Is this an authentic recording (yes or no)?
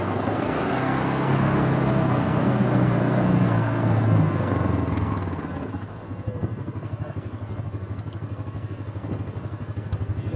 no